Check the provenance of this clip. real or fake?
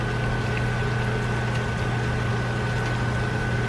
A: real